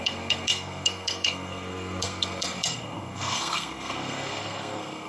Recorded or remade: remade